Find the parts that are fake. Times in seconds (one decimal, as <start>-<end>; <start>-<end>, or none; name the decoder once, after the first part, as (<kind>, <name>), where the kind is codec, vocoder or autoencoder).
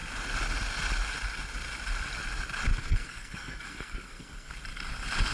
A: 2.7-4.5 (codec, SNAC)